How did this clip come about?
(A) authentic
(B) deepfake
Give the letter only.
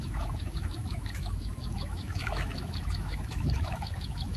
B